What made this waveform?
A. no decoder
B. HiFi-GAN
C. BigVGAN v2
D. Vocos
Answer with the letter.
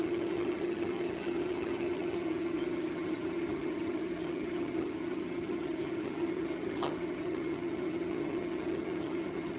B